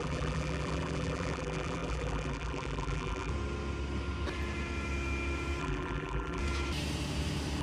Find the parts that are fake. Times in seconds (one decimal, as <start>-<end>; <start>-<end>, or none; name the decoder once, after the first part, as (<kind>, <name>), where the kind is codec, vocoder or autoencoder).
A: 0.0-3.3 (vocoder, BigVGAN v2); 5.6-6.4